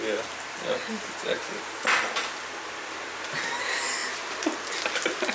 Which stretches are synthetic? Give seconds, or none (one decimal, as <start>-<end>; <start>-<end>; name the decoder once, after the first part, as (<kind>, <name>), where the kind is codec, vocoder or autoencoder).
none